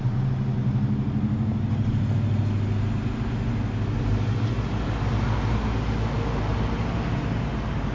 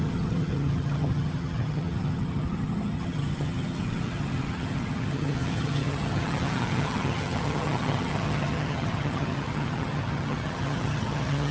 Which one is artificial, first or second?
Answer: second